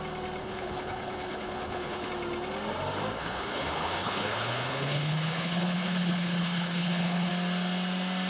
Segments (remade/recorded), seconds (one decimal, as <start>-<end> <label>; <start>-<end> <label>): 0.0-0.4 recorded; 0.4-2.1 remade; 2.1-3.2 recorded; 3.2-7.3 remade; 7.3-8.3 recorded